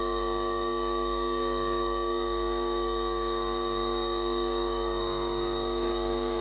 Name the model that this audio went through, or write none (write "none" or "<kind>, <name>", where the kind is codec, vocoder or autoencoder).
codec, DAC